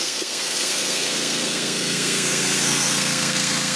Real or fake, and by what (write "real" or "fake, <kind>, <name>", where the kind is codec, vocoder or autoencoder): fake, codec, SNAC